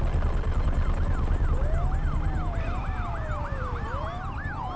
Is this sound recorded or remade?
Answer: remade